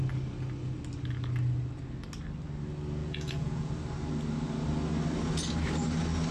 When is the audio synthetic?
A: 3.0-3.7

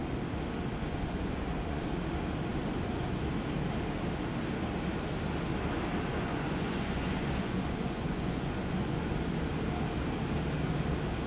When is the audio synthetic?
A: 0.8-1.9; 2.5-3.2; 6.1-9.1

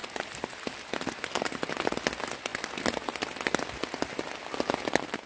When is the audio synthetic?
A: none

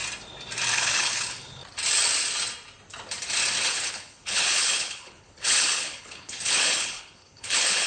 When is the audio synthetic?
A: 0.7-1.6; 3.7-7.9

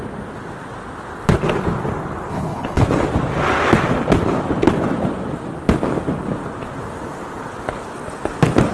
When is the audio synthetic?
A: 2.3-2.8

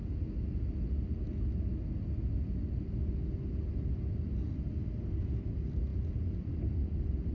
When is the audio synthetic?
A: none

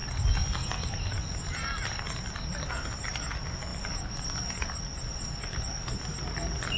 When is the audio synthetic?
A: none